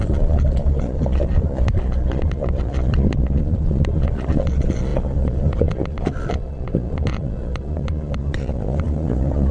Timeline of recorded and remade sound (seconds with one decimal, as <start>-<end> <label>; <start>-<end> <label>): 0.0-9.5 remade